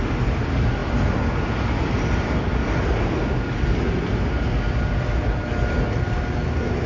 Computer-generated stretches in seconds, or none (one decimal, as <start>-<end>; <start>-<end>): none